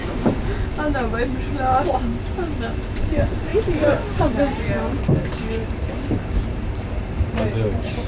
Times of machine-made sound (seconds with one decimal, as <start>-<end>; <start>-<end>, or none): 5.6-8.1